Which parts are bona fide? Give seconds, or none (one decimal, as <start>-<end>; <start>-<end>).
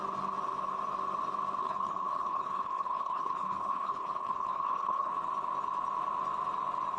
0.0-1.6; 5.1-7.0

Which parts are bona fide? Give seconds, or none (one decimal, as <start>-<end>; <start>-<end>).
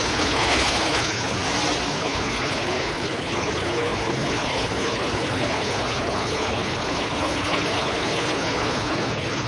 1.4-1.9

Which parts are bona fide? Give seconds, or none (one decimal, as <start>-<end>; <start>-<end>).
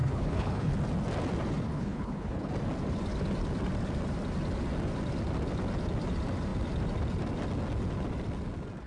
0.7-1.7; 2.5-8.9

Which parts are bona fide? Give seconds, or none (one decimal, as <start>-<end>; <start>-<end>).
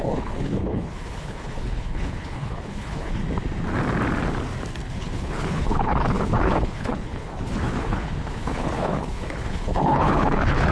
3.2-4.9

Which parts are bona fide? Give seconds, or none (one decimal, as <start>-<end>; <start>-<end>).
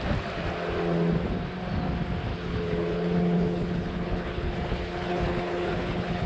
0.0-2.3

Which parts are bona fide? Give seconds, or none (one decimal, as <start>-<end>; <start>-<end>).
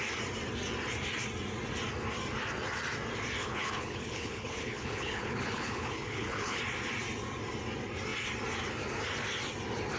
0.0-3.4; 6.6-10.0